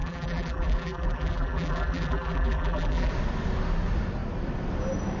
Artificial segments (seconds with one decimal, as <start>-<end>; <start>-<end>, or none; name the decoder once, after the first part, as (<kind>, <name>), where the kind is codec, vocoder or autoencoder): 0.0-3.1 (vocoder, BigVGAN v2)